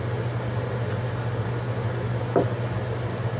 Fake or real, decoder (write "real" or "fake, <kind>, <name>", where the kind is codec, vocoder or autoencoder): real